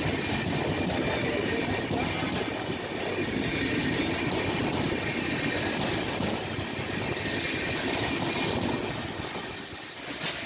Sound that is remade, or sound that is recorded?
recorded